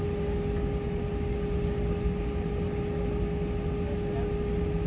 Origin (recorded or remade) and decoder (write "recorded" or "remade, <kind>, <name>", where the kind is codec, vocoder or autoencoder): recorded